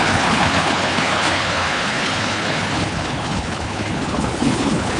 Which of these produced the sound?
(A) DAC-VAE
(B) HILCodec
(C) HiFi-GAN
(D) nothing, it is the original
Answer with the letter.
B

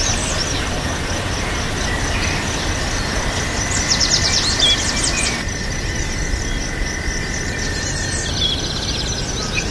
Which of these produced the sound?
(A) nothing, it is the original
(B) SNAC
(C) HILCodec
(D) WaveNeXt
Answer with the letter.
A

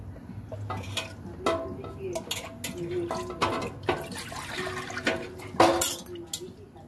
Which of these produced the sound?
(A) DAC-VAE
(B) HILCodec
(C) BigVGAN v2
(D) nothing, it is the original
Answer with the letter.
D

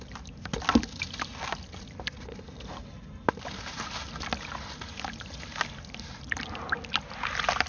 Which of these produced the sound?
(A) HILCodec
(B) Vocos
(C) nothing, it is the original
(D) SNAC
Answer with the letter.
C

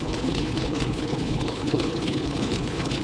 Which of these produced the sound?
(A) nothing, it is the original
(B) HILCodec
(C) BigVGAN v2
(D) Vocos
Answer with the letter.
B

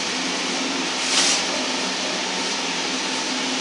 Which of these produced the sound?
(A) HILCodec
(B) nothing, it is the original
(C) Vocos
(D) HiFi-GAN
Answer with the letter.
B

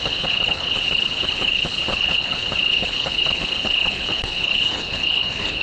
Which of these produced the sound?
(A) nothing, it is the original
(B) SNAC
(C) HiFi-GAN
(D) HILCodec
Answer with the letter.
D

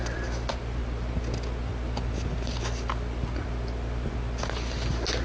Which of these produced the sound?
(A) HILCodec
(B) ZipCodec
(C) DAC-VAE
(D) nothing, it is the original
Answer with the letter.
D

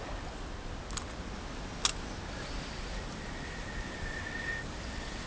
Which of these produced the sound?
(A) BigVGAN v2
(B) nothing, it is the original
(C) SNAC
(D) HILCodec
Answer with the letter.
B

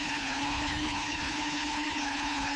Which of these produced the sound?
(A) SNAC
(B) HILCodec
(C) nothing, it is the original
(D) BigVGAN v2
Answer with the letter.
B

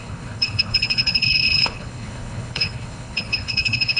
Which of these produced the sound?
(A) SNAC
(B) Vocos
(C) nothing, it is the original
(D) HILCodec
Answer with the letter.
D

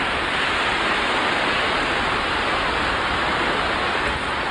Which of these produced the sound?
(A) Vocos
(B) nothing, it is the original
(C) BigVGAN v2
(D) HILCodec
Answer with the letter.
B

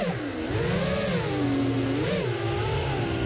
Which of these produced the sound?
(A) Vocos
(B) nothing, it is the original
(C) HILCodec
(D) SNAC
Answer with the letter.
B